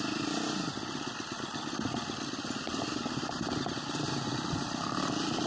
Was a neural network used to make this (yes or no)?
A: yes